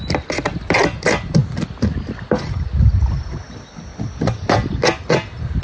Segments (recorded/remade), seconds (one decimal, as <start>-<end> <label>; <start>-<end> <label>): 0.0-5.6 recorded